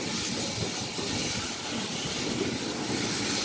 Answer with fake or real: real